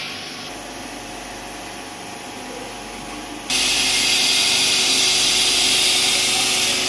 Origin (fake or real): real